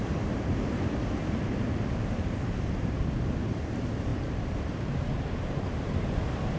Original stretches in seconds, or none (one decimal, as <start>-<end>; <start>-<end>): 3.5-4.1; 5.6-6.6